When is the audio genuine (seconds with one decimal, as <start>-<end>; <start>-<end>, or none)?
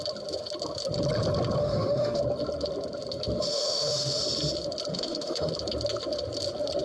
0.0-1.6; 2.2-3.5; 4.2-4.9; 5.5-6.8